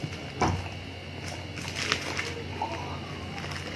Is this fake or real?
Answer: real